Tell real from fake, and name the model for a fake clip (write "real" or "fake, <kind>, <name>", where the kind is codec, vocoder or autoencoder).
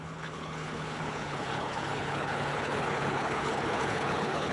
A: fake, codec, HILCodec